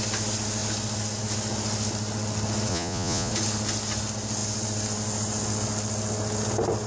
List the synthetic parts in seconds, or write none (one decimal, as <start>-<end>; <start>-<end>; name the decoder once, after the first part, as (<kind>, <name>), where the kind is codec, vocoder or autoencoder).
2.7-3.3 (vocoder, Vocos)